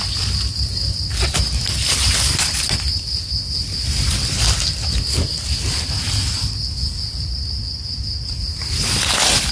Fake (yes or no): no